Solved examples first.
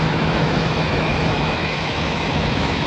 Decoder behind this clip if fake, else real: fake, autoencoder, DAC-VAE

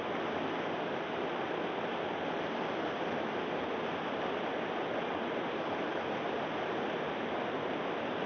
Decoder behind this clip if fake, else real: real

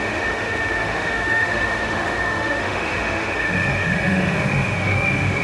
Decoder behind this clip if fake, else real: fake, autoencoder, DAC-VAE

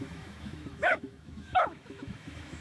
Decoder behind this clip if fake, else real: fake, autoencoder, DAC-VAE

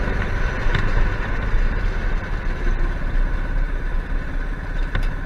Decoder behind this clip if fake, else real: real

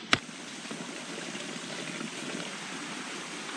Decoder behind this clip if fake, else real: real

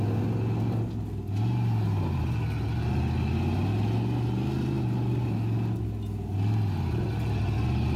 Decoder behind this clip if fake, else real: real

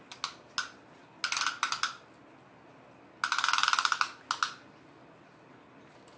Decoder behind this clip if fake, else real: real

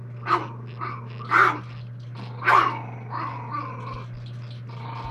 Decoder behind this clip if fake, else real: real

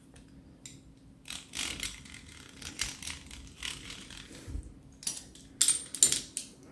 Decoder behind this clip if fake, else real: real